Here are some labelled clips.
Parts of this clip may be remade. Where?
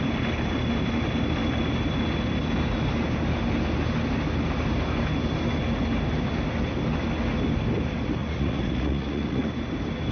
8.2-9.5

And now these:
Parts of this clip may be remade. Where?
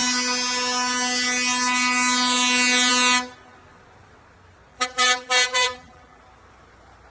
4.7-6.2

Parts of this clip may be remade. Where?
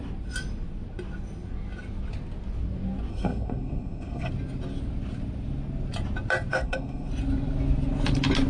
3.1-4.3; 6.5-7.1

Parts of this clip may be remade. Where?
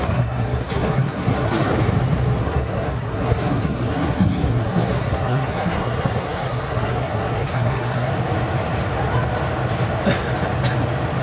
0.0-1.7; 2.4-8.1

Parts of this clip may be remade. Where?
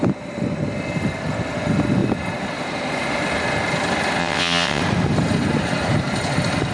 4.2-4.8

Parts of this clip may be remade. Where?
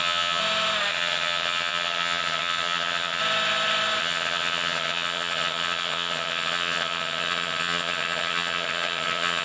0.0-0.4; 0.9-3.2; 4.0-9.4